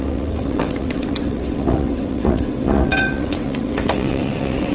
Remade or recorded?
remade